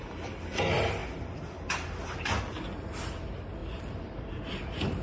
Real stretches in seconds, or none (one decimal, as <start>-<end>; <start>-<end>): 0.0-5.0